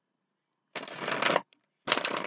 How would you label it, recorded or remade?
recorded